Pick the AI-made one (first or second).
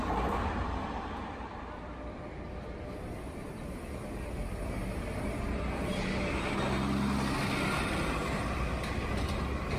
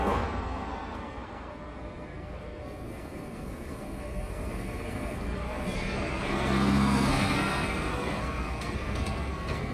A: second